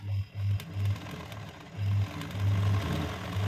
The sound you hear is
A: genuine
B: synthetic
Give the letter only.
A